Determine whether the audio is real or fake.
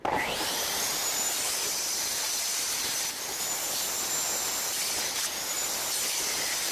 real